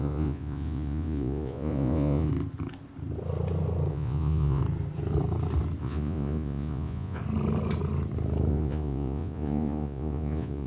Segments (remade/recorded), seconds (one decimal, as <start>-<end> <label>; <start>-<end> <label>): 0.0-2.3 remade; 2.3-3.9 recorded; 3.9-4.6 remade; 4.6-5.8 recorded; 5.8-7.2 remade; 7.2-8.5 recorded; 8.5-10.7 remade